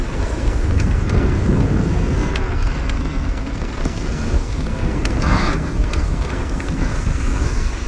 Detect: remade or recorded remade